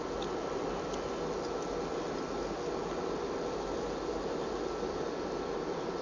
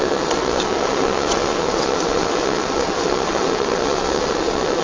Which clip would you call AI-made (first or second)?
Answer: second